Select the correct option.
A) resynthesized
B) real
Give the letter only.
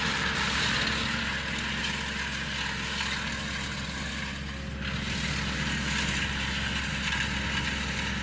B